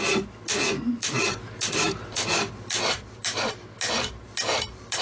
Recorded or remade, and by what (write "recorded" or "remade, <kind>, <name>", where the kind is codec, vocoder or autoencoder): recorded